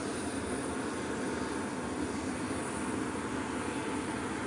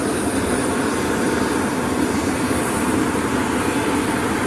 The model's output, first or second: second